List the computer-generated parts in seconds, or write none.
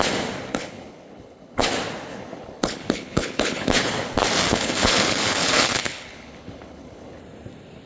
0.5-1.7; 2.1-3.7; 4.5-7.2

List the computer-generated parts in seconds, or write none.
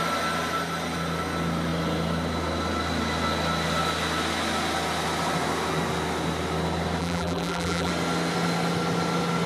7.0-7.9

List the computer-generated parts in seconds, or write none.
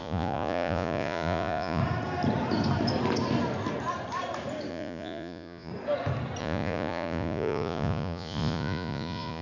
0.0-1.8; 4.7-5.7; 6.4-9.4